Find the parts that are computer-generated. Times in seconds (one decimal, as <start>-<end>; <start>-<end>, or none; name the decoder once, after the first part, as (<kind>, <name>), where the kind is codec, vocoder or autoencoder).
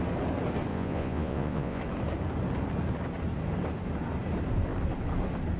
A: 0.7-1.8 (vocoder, Vocos)